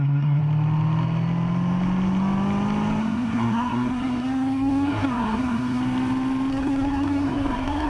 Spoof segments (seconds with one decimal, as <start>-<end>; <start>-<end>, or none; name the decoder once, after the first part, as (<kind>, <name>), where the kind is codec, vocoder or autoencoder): 0.0-0.4 (codec, SNAC); 3.0-5.8; 6.5-7.9